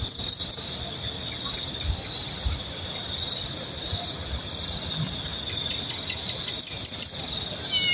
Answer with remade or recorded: recorded